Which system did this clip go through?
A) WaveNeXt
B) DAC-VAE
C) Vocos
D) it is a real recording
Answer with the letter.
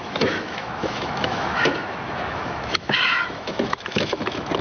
B